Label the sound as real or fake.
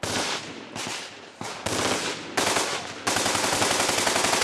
real